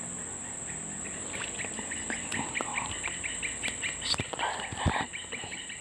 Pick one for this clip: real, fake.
real